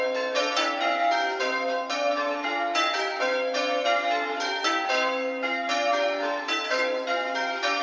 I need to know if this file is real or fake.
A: real